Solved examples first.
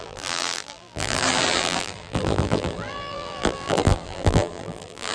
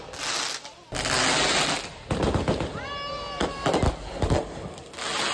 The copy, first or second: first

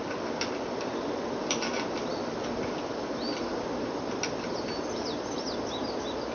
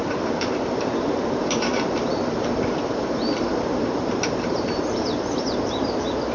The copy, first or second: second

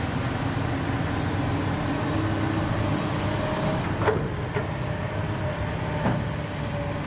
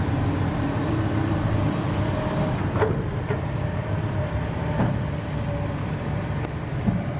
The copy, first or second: second